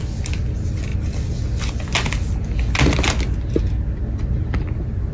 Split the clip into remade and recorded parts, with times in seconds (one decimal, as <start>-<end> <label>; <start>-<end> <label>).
0.0-5.1 recorded